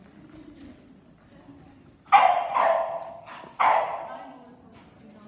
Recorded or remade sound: recorded